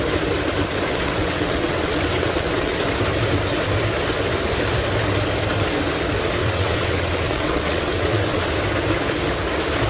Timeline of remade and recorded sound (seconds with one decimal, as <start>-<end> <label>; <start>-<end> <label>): 0.0-0.9 recorded; 0.9-2.8 remade; 2.8-6.4 recorded; 6.4-8.5 remade; 8.5-9.9 recorded